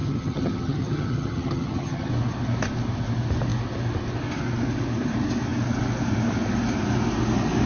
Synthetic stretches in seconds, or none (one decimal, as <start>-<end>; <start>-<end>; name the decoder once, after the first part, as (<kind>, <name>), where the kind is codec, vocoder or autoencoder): 0.0-2.1 (vocoder, HiFi-GAN)